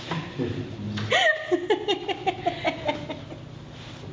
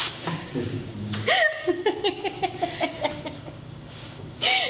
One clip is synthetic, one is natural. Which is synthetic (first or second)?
second